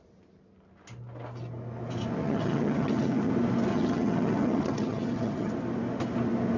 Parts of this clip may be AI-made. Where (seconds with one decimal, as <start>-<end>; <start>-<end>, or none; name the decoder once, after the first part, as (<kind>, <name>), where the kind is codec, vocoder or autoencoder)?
2.2-3.3 (vocoder, HiFi-GAN); 3.7-5.5

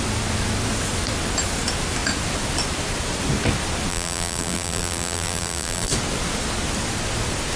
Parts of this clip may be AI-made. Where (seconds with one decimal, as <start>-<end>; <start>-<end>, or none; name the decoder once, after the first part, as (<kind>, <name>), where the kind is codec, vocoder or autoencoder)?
3.9-5.9 (vocoder, BigVGAN v2)

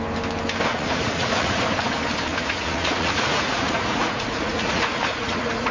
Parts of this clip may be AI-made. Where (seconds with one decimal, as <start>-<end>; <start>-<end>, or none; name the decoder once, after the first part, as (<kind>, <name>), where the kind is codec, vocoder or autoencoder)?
0.7-1.6 (vocoder, Vocos); 2.3-5.7

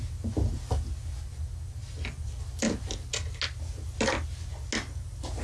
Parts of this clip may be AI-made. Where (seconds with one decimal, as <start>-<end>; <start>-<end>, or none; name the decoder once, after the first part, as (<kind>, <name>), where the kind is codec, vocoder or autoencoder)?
1.8-2.4 (vocoder, BigVGAN v2)

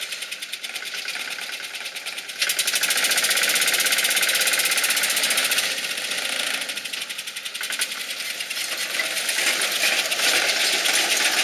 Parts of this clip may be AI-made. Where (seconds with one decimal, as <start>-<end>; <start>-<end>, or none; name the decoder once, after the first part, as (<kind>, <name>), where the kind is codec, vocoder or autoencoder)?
none

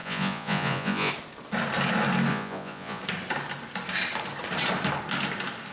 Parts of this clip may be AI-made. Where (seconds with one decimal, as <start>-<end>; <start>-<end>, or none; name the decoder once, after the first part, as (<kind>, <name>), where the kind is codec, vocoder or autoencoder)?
0.0-1.1 (vocoder, Vocos); 2.3-3.0